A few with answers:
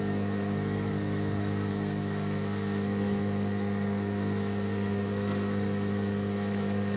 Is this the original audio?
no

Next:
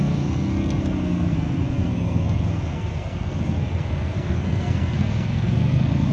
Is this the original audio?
no